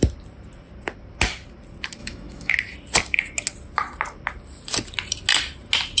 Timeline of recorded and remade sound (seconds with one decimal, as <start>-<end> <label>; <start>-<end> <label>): 0.0-2.0 recorded; 2.0-2.5 remade; 2.5-6.0 recorded